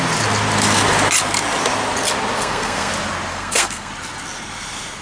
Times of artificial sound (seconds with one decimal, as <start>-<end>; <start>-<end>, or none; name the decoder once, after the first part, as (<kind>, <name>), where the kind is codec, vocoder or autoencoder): 2.4-2.9 (codec, SNAC); 3.3-3.9